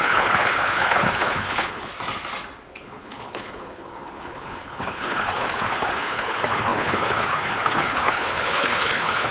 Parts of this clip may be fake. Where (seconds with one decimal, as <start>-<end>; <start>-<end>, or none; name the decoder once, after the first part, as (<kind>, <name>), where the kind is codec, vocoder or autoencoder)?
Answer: 0.0-1.9 (codec, HILCodec); 2.7-9.3